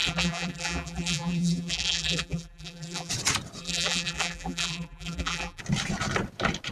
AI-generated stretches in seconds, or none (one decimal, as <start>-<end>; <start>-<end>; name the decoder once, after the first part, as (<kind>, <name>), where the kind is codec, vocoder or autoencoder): 0.0-3.1 (vocoder, BigVGAN v2); 3.6-5.6